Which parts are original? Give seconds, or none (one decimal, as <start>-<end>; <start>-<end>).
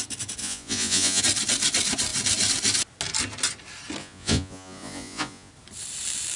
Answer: 0.0-0.4; 1.2-4.0; 5.5-6.4